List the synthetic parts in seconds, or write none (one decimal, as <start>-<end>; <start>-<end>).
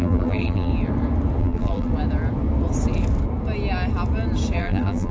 0.0-0.7; 1.4-1.9; 4.6-5.1